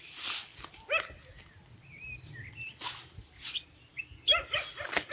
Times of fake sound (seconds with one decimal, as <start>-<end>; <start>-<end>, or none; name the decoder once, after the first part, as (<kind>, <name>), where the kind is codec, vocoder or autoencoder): none